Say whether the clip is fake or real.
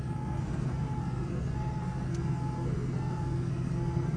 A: fake